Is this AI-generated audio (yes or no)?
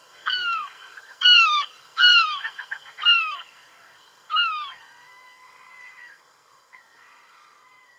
yes